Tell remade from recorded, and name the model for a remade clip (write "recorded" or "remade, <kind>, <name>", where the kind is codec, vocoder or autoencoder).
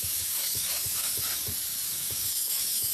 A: remade, codec, DAC